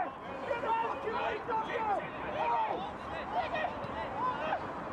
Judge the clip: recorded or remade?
recorded